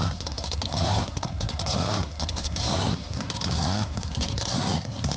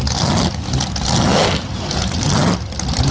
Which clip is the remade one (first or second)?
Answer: first